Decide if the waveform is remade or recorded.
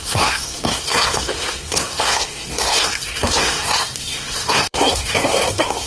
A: remade